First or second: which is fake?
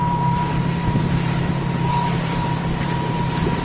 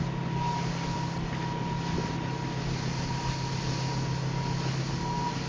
first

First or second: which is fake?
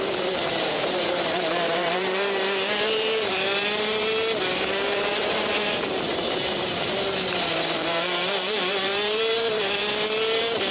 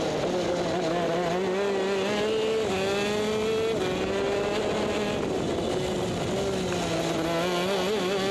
first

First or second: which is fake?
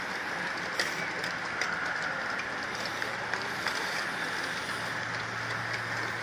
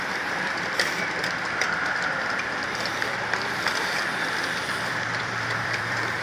second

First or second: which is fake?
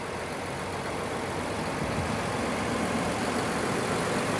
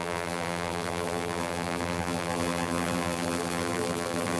second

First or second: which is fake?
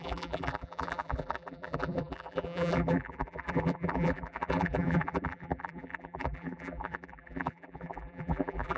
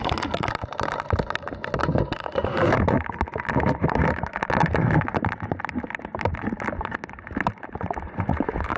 first